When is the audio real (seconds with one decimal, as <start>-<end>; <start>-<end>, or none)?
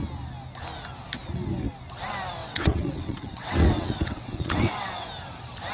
0.0-2.4; 5.1-5.7